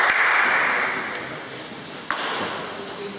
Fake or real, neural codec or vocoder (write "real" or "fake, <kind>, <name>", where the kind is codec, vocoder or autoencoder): real